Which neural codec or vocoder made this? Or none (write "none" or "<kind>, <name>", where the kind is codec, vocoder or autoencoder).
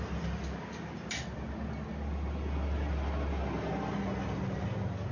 none